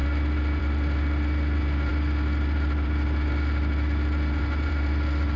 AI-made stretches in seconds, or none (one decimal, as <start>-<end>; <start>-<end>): none

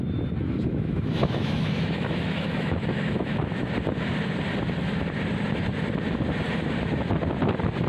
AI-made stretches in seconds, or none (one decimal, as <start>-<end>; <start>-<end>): 0.7-3.7

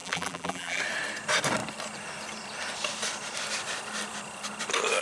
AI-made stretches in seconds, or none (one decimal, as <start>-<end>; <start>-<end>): 0.0-0.8

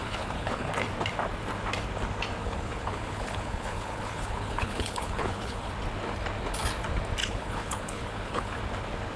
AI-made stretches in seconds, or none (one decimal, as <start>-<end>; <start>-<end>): 0.0-0.7; 2.4-5.7; 7.2-8.6

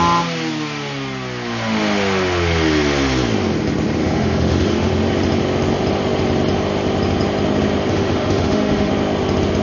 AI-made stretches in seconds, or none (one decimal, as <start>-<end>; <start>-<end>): 4.0-4.9; 7.9-8.9